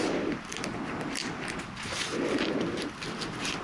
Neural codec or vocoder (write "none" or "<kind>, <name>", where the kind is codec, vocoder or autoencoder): none